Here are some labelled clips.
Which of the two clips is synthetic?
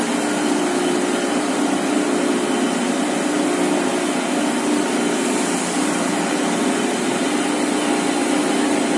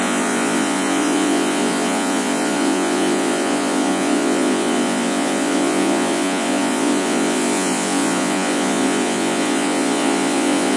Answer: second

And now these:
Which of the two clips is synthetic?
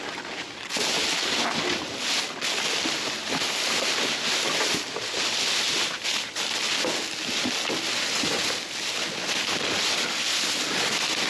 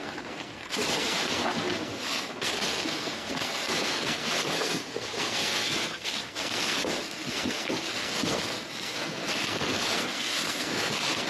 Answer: second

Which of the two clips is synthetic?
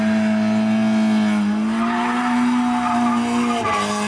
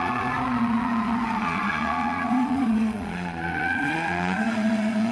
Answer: second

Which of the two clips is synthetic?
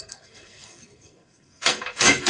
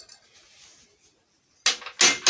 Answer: first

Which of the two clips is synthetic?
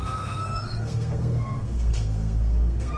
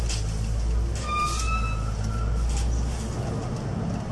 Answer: first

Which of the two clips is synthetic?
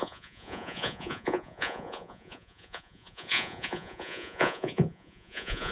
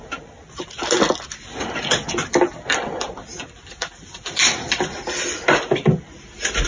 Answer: first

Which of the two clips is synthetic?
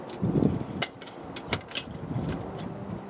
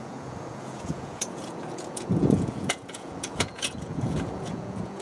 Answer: second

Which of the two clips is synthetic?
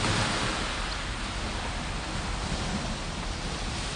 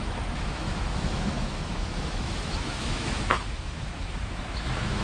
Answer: second